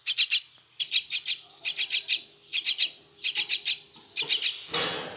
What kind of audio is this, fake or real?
real